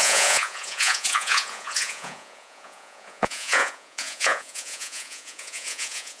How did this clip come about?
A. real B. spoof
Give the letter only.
B